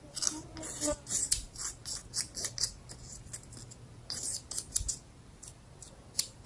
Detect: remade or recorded recorded